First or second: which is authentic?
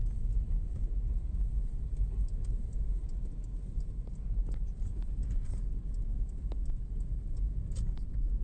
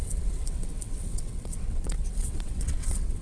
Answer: first